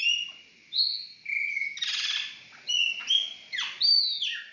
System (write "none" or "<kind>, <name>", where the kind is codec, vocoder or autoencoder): none